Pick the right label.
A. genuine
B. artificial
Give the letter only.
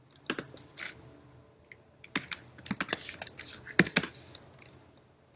A